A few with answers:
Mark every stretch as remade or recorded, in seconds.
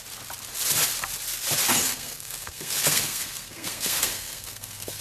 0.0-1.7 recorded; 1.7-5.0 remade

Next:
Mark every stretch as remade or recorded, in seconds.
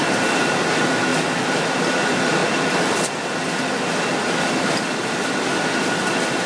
0.0-6.5 recorded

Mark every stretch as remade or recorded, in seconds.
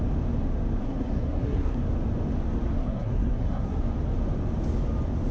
0.0-0.8 recorded; 0.8-1.8 remade; 1.8-2.8 recorded; 2.8-3.8 remade; 3.8-5.3 recorded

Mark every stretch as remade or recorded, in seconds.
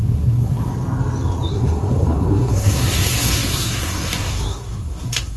0.0-0.7 remade; 0.7-1.5 recorded; 1.5-5.4 remade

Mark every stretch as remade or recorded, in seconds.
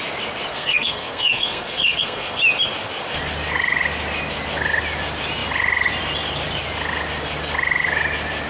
0.0-0.5 recorded; 0.5-2.4 remade; 2.4-8.5 recorded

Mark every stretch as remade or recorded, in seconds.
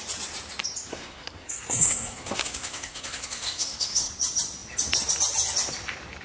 0.0-0.9 recorded; 0.9-4.1 remade; 4.1-6.2 recorded